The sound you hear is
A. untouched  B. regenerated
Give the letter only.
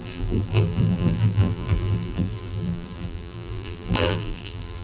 B